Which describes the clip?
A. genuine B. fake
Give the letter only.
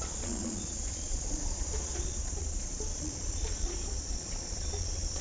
B